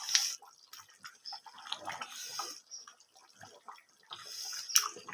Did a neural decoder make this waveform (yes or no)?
no